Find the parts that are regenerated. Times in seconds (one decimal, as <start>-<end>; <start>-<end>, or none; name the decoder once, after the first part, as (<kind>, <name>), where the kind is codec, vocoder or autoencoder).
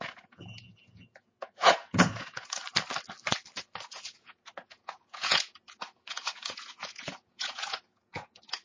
0.0-2.6 (vocoder, Vocos); 3.9-8.6